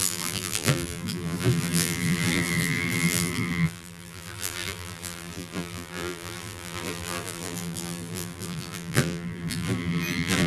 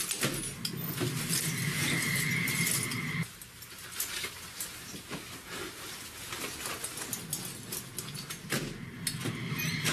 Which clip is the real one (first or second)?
second